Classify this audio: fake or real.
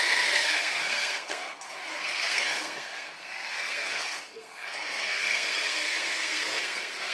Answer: fake